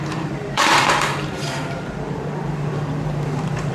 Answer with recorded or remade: remade